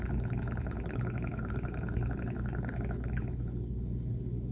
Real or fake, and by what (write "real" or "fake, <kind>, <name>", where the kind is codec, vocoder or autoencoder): fake, codec, HILCodec